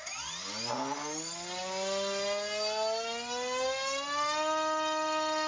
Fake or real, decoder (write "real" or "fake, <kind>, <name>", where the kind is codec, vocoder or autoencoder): real